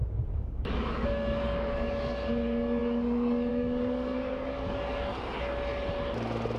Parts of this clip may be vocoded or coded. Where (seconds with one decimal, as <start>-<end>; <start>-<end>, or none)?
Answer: 0.0-5.1